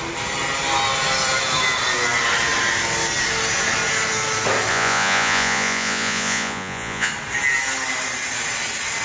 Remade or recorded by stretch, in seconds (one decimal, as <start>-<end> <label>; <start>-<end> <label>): 0.0-4.7 recorded; 4.7-7.1 remade; 7.1-9.0 recorded